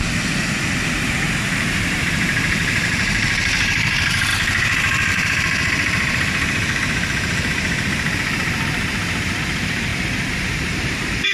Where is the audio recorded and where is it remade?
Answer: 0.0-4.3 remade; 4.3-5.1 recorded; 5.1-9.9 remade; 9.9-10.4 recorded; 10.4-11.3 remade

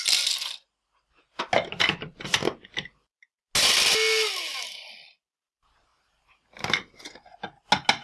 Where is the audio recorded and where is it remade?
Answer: 0.0-5.9 recorded; 5.9-7.0 remade; 7.0-8.0 recorded